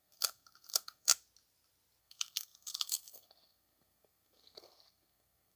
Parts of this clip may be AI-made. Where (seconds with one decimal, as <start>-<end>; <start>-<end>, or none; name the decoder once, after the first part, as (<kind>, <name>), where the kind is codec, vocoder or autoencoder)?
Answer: 0.0-1.1 (codec, SNAC); 2.0-5.6